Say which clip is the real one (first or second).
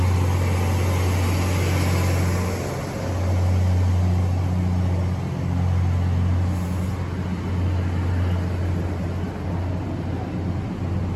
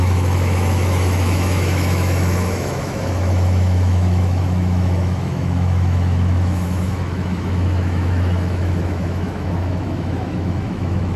first